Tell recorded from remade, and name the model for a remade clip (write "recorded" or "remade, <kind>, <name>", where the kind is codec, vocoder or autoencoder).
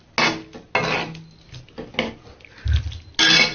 recorded